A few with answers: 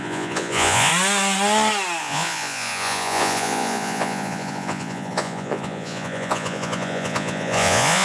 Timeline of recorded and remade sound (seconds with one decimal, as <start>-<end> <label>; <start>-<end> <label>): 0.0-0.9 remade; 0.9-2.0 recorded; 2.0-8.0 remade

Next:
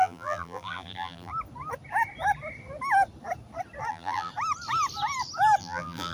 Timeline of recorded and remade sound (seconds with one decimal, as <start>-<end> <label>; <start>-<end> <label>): 0.0-1.3 remade; 1.3-3.9 recorded; 3.9-4.3 remade; 4.3-5.6 recorded; 5.6-6.1 remade

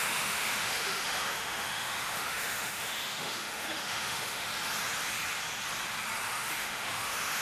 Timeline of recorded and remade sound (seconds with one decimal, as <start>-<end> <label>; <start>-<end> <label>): 0.0-4.5 remade; 4.5-6.3 recorded; 6.3-7.4 remade

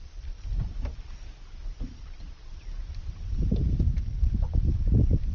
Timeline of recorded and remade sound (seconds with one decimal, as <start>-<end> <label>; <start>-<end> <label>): 0.0-5.3 recorded

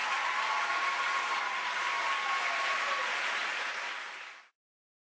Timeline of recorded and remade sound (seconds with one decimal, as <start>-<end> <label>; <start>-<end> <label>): 0.0-1.4 recorded; 1.4-1.8 remade; 1.8-3.4 recorded; 3.4-5.1 remade

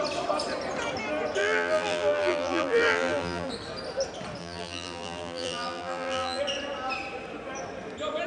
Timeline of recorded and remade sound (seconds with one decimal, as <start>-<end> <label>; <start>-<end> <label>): 0.0-1.4 recorded; 1.4-3.5 remade; 3.5-4.4 recorded; 4.4-6.4 remade; 6.4-8.3 recorded

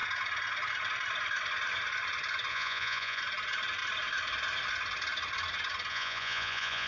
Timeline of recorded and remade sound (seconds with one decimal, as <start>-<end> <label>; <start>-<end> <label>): 0.0-2.5 recorded; 2.5-3.2 remade; 3.2-5.9 recorded; 5.9-6.9 remade